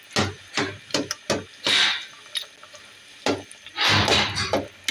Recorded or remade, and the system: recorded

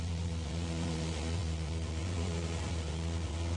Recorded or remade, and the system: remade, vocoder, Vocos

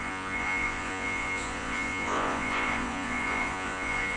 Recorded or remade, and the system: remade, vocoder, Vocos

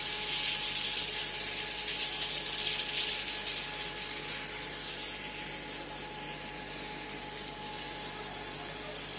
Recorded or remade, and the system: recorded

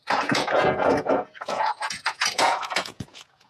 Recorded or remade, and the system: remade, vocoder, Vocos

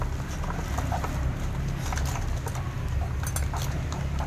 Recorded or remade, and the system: recorded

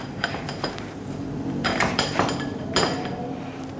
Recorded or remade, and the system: remade, vocoder, BigVGAN v2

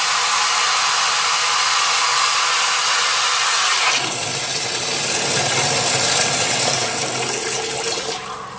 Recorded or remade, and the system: recorded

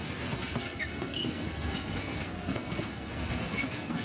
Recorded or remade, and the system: remade, codec, SNAC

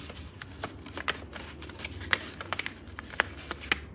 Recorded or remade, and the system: recorded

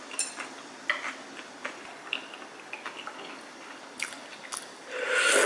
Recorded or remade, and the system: recorded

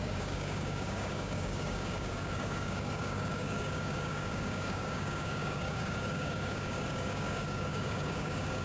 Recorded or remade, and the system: remade, codec, DAC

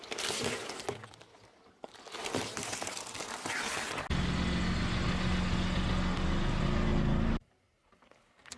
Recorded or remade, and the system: recorded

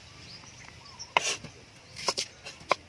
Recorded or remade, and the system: recorded